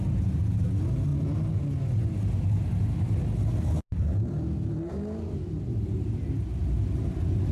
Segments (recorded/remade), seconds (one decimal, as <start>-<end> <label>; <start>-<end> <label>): 0.0-7.5 recorded